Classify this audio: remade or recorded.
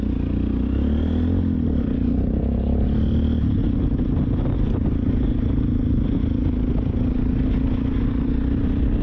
recorded